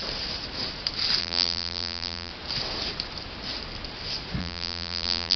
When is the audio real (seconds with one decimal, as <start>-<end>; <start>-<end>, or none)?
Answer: 0.0-1.2; 2.3-4.4